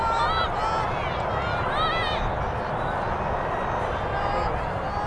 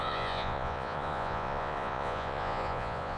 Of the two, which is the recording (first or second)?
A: first